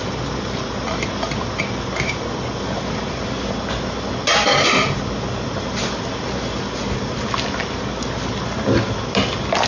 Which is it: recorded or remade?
recorded